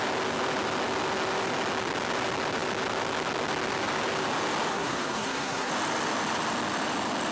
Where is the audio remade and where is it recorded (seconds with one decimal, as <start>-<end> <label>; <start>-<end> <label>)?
0.0-4.7 recorded; 4.7-5.7 remade; 5.7-7.3 recorded